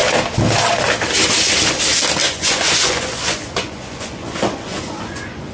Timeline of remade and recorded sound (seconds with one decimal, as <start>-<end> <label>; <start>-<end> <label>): 0.0-2.2 recorded; 2.2-5.5 remade